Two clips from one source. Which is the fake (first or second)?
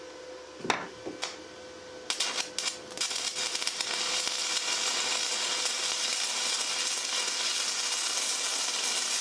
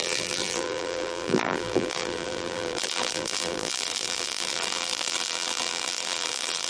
second